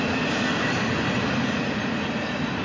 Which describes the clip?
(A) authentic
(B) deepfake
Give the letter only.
A